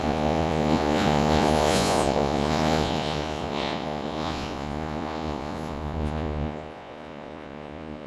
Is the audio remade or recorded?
remade